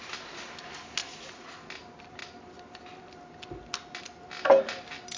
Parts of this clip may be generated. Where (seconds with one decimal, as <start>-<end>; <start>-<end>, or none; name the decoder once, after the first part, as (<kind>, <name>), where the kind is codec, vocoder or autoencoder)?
1.0-1.6 (vocoder, Vocos)